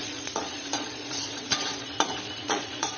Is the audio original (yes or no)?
no